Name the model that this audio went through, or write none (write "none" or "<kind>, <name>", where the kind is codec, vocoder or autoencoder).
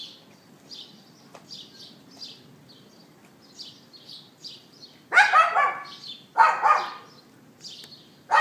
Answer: none